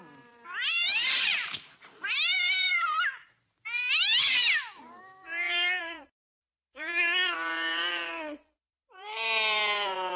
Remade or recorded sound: remade